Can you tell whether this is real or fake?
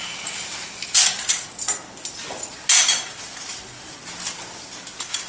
real